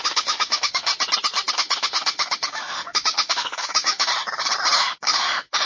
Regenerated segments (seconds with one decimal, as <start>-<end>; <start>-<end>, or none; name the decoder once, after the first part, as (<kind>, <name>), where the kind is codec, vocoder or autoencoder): 0.0-0.9 (autoencoder, DAC-VAE); 1.5-4.1; 4.8-5.7